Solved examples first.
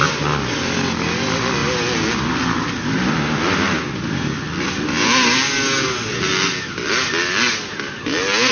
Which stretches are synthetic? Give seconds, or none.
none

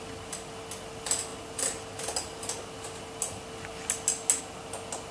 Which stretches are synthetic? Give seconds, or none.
none